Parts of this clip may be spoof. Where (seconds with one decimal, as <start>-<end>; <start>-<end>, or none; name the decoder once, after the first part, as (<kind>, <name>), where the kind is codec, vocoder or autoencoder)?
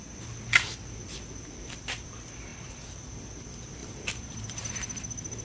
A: 3.8-4.7 (vocoder, BigVGAN v2)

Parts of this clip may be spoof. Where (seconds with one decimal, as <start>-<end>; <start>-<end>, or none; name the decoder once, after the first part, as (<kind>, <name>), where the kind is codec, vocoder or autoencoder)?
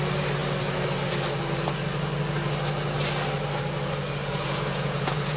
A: 4.2-5.4 (vocoder, Vocos)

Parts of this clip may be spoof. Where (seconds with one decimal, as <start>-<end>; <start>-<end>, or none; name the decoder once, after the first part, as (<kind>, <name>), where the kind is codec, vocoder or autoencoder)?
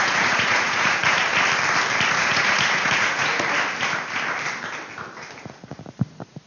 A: 0.0-1.3 (vocoder, Vocos); 2.1-3.3; 5.4-6.5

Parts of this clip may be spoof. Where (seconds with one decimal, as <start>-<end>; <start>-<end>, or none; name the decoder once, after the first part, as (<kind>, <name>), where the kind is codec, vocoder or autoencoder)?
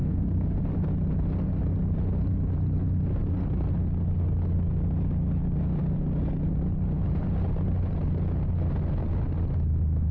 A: 0.0-0.6 (codec, SNAC)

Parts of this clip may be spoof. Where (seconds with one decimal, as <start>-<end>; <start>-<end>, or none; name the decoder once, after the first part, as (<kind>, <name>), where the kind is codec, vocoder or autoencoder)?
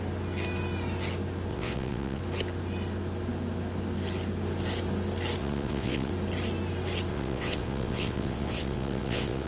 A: 1.5-2.2 (vocoder, WaveNeXt); 5.4-6.1; 7.1-9.5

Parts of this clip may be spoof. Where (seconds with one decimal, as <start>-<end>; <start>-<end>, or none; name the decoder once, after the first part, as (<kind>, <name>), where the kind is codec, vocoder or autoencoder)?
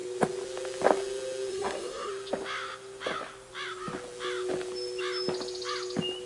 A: 1.5-2.1 (codec, SNAC)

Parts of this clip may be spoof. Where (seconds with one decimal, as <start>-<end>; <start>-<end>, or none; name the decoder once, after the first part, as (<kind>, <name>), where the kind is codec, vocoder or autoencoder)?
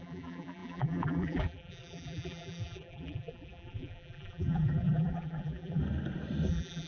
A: 0.0-5.8 (vocoder, BigVGAN v2); 6.5-6.9